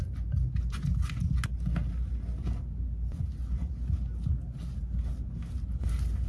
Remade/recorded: recorded